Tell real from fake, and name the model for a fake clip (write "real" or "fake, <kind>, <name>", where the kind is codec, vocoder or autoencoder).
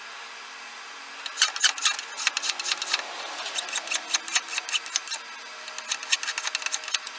real